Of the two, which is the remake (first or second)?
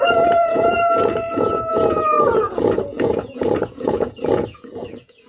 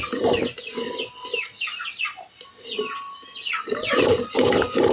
first